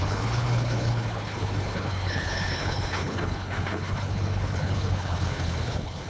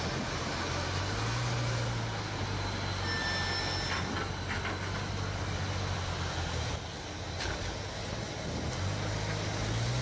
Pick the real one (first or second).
second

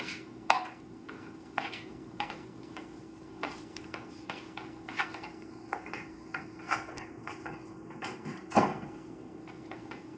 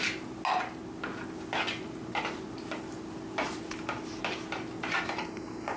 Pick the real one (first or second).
second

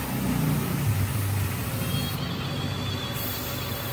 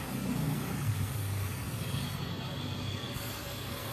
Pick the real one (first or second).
first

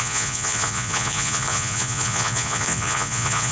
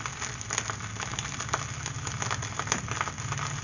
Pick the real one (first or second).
second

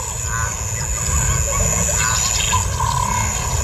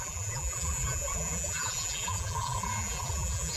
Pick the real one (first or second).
first